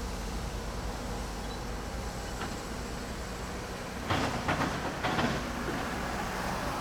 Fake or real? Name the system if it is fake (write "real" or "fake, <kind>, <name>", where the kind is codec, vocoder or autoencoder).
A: real